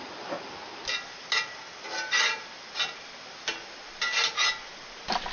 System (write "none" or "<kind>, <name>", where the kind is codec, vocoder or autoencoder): none